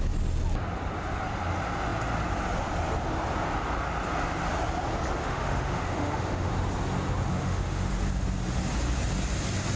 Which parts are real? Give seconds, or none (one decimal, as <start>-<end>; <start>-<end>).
0.0-5.2; 6.5-7.3; 7.9-9.8